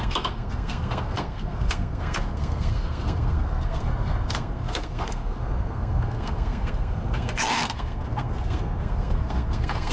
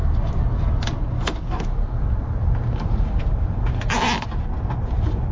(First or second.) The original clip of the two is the second